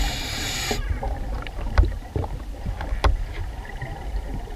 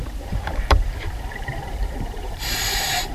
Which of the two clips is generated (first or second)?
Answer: second